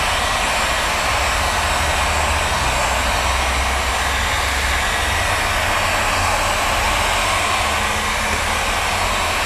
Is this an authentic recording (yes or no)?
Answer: yes